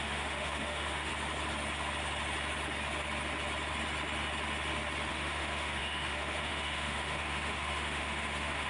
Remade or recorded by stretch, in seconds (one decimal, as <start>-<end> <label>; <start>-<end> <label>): 0.0-1.1 remade; 1.1-5.1 recorded; 5.1-8.7 remade